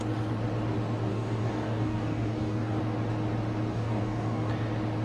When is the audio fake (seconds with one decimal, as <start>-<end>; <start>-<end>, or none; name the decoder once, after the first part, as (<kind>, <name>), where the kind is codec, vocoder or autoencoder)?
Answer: 1.1-2.8 (codec, DAC); 3.7-4.5